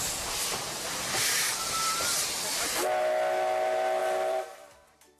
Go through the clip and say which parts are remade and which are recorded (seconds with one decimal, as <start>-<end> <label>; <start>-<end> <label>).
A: 0.0-4.0 recorded; 4.0-5.2 remade